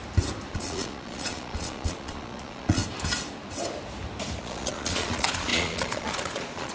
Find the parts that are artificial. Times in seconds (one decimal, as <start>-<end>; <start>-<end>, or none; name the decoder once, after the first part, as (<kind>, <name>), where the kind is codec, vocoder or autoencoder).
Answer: 0.5-2.8 (vocoder, Vocos); 4.4-6.7